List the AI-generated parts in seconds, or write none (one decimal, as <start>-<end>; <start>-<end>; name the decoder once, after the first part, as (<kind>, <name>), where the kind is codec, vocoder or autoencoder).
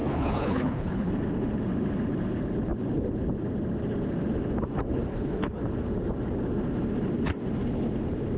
0.0-1.1 (codec, HILCodec); 5.1-5.6